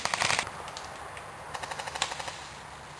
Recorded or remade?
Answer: recorded